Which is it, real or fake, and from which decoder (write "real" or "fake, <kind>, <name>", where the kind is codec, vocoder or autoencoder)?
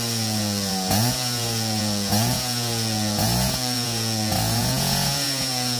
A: fake, vocoder, Vocos